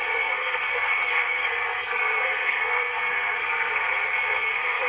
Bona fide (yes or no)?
no